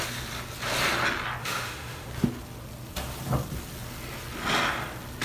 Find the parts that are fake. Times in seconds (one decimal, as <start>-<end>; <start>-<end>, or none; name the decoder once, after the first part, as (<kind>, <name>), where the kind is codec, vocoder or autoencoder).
1.4-2.1 (autoencoder, DAC-VAE)